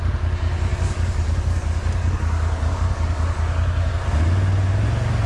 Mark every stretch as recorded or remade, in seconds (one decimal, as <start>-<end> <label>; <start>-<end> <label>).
0.0-0.7 recorded; 0.7-3.9 remade; 3.9-5.3 recorded